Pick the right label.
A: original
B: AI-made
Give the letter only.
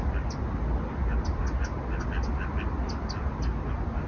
A